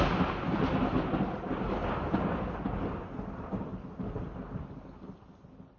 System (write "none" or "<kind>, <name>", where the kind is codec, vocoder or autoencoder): none